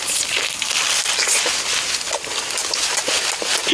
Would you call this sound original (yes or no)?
yes